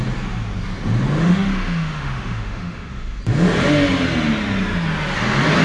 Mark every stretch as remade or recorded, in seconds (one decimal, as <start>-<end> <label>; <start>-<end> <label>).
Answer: 0.0-1.2 recorded; 1.2-3.2 remade; 3.2-5.6 recorded